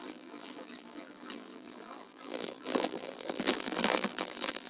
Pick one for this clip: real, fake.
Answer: fake